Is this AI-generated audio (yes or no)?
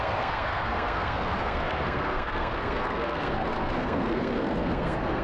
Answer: yes